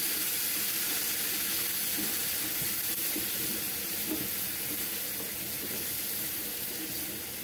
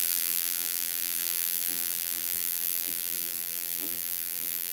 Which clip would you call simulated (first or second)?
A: second